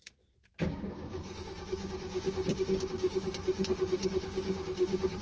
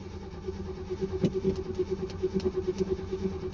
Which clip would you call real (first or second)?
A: second